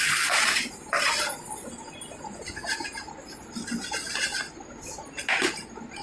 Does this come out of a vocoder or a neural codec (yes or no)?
no